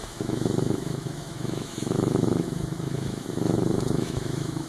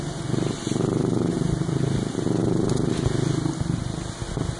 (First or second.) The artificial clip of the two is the first